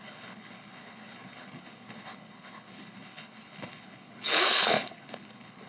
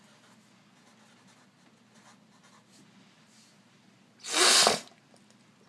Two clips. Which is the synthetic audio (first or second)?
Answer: first